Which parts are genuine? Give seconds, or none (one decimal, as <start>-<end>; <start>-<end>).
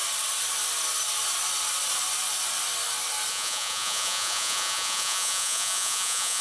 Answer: 0.0-3.3